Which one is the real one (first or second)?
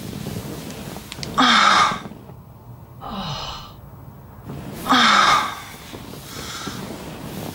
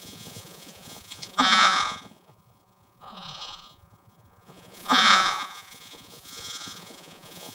first